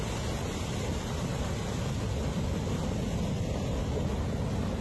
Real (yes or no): yes